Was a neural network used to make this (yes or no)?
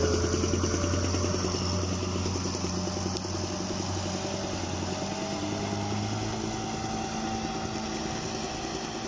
no